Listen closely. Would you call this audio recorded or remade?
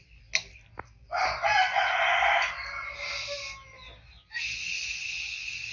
recorded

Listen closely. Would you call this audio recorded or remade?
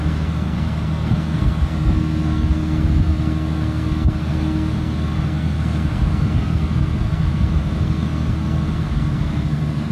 remade